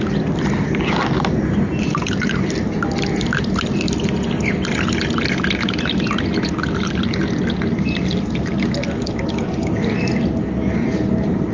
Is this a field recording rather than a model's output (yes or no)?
yes